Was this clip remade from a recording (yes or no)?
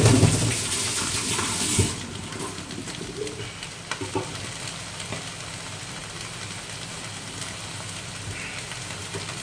no